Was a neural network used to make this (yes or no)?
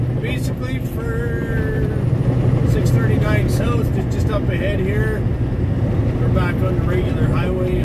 no